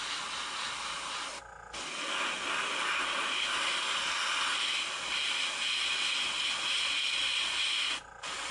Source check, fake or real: real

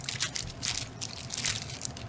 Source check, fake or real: real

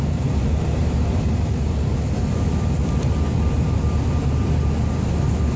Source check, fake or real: real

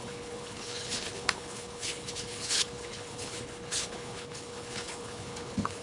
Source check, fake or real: fake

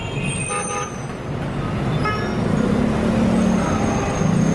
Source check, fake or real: real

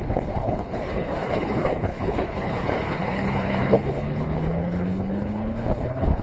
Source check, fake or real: fake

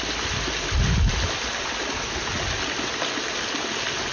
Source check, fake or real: real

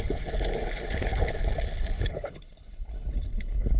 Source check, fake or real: fake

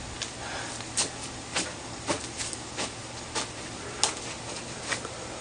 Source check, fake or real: real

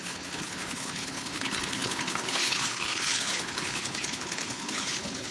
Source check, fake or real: fake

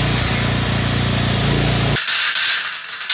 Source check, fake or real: real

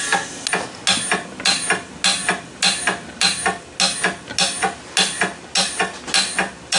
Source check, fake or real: real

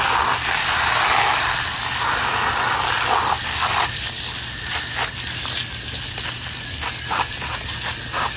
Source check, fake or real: real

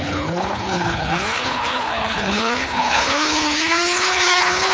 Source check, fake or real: fake